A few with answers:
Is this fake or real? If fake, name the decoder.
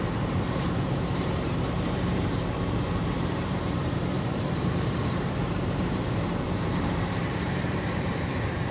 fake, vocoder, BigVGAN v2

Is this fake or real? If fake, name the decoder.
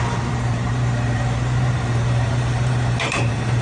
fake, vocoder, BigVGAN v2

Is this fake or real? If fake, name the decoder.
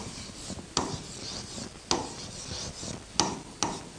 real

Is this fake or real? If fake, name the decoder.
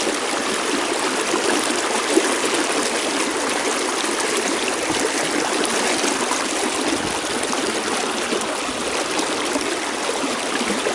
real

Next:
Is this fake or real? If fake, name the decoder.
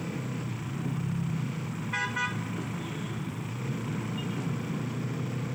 real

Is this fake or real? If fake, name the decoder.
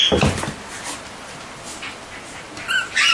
real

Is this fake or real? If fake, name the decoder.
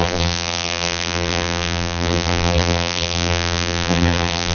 fake, vocoder, BigVGAN v2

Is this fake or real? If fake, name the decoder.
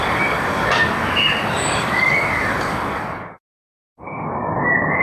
fake, codec, DAC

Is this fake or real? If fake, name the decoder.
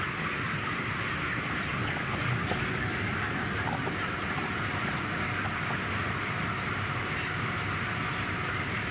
real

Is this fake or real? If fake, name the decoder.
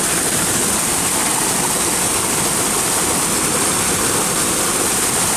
real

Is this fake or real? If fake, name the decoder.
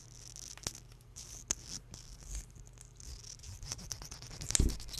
real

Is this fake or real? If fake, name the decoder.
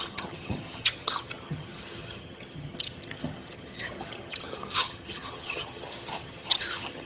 fake, vocoder, HiFi-GAN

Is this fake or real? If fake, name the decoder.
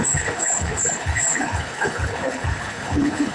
fake, codec, HILCodec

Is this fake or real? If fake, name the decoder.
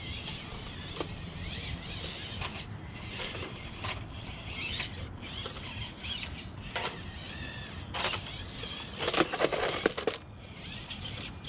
real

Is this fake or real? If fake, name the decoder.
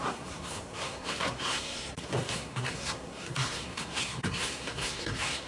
fake, codec, SNAC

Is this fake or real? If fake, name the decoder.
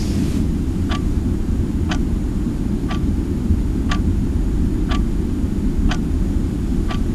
real